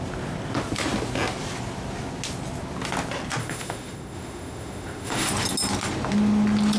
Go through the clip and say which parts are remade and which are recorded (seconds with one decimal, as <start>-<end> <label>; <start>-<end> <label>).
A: 0.0-3.4 recorded; 3.4-5.3 remade; 5.3-6.8 recorded

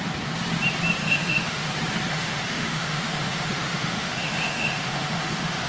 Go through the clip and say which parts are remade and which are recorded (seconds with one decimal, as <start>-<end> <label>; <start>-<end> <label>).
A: 0.0-1.0 recorded; 1.0-1.7 remade; 1.7-2.1 recorded; 2.1-5.7 remade

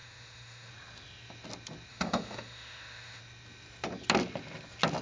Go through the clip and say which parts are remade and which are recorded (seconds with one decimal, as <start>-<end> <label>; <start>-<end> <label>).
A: 0.0-0.7 remade; 0.7-1.9 recorded; 1.9-3.2 remade; 3.2-5.0 recorded

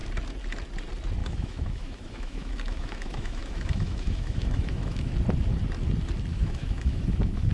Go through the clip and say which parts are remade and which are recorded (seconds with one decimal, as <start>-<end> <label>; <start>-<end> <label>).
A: 0.0-1.2 recorded; 1.2-5.1 remade; 5.1-6.3 recorded; 6.3-7.5 remade

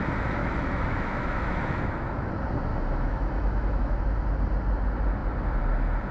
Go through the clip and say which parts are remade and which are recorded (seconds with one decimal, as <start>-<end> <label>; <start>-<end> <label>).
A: 0.0-0.4 recorded; 0.4-2.3 remade; 2.3-2.7 recorded; 2.7-4.0 remade; 4.0-6.1 recorded

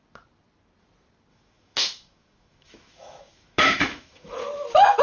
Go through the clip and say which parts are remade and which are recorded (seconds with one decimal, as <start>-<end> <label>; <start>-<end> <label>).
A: 0.0-1.3 recorded; 1.3-4.3 remade; 4.3-5.0 recorded

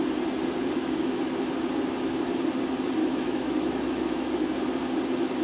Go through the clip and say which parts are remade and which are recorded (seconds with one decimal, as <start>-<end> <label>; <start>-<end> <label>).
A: 0.0-0.6 recorded; 0.6-1.2 remade; 1.2-3.0 recorded; 3.0-4.4 remade; 4.4-5.4 recorded